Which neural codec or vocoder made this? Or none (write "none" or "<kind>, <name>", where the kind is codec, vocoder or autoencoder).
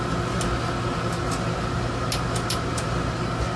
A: none